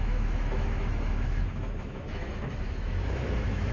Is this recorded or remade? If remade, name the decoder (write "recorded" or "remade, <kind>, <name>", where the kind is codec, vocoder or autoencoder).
remade, autoencoder, DAC-VAE